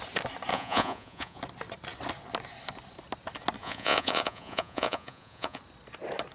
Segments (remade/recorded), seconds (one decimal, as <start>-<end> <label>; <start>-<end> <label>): 0.0-0.5 recorded; 0.5-1.4 remade; 1.4-3.6 recorded; 3.6-5.6 remade; 5.6-6.3 recorded